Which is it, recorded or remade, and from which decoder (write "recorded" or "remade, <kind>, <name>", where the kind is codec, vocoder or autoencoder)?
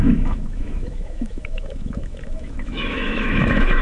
remade, autoencoder, DAC-VAE